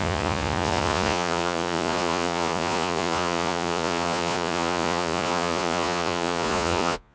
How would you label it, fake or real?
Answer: fake